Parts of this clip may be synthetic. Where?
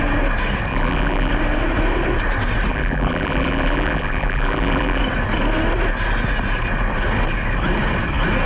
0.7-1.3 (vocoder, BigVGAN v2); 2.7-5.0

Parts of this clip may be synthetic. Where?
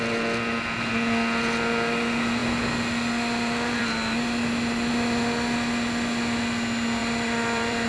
7.0-7.9 (vocoder, BigVGAN v2)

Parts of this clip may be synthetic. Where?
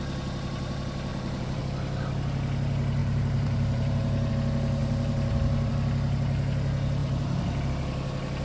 1.1-1.6 (vocoder, BigVGAN v2); 3.0-4.3; 4.8-5.7; 7.0-7.7